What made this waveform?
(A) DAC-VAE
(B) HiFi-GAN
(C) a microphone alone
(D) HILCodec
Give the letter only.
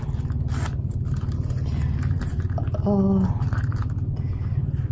C